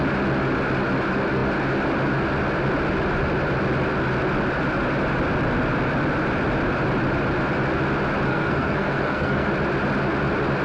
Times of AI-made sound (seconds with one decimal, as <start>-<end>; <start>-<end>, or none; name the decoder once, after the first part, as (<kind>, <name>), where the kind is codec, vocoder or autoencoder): 8.3-9.5 (codec, SNAC)